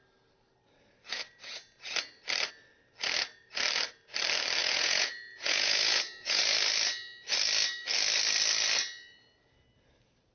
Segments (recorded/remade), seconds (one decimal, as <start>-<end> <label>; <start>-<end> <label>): 0.0-1.1 recorded; 1.1-1.9 remade; 1.9-4.6 recorded; 4.6-6.4 remade; 6.4-10.3 recorded